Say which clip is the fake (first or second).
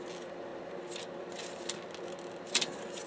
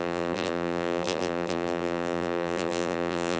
second